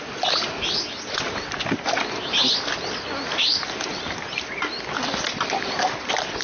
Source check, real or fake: real